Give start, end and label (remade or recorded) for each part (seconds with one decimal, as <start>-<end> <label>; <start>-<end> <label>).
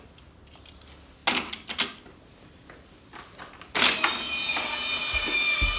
0.0-5.8 recorded